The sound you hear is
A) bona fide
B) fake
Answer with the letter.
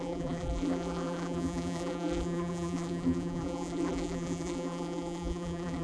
B